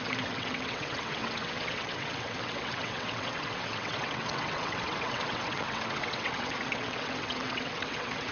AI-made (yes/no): yes